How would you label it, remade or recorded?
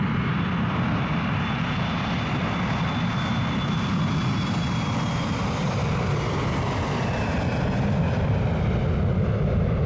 recorded